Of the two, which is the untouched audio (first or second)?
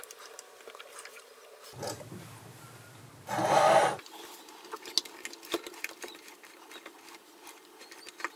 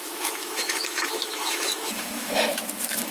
first